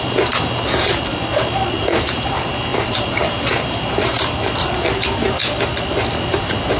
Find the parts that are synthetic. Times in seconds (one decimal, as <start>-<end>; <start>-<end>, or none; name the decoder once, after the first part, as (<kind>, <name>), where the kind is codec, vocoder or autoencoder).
0.0-1.1 (vocoder, BigVGAN v2); 1.7-5.4; 6.3-6.8

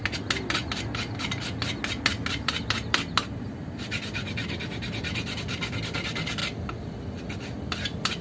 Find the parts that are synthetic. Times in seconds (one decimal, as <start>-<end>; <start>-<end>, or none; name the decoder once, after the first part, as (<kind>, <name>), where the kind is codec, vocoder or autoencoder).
none

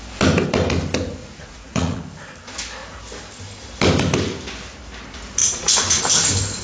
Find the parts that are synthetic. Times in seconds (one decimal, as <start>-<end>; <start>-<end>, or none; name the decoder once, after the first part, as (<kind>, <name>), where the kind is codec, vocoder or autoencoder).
1.2-2.0 (vocoder, Vocos); 5.4-6.0

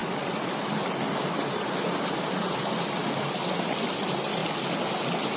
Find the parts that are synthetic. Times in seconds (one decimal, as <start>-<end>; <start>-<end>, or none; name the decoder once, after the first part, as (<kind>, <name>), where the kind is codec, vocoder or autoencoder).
none

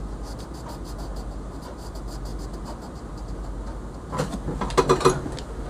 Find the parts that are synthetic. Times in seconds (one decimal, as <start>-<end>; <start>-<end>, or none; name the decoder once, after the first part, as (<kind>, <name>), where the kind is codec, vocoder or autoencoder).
none

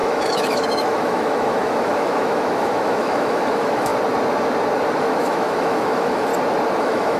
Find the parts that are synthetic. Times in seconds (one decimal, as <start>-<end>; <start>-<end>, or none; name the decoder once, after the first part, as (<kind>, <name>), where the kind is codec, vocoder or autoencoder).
0.0-3.9 (autoencoder, DAC-VAE); 5.0-6.3; 6.8-7.2

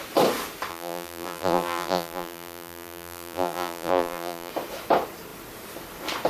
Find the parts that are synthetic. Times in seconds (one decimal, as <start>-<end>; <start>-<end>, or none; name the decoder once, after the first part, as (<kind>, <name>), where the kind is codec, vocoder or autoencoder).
0.7-4.5 (vocoder, BigVGAN v2)

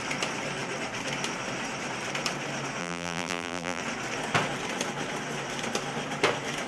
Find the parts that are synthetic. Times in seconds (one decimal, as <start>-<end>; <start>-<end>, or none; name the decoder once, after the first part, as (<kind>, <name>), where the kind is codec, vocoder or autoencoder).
2.8-3.8 (vocoder, BigVGAN v2)